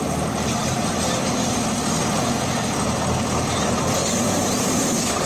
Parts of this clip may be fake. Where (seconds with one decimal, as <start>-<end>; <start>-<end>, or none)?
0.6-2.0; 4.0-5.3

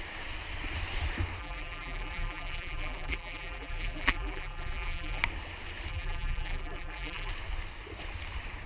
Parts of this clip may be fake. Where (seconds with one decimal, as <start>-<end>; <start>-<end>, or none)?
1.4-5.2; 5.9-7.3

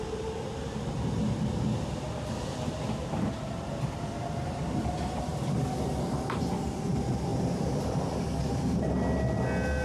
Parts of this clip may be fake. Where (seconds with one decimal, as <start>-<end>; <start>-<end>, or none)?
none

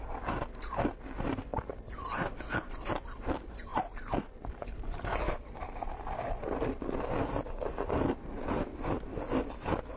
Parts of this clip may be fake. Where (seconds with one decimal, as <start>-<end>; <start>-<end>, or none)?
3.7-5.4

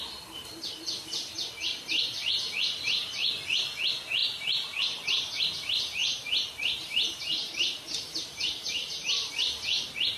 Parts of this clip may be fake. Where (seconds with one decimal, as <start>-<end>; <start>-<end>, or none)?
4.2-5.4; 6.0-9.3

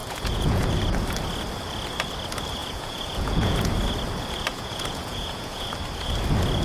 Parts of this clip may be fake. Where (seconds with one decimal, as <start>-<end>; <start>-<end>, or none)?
0.0-0.7; 2.6-3.7; 4.5-5.7

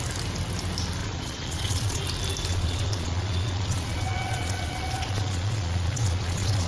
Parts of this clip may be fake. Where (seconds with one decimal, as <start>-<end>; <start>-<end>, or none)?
1.0-2.0; 2.5-6.7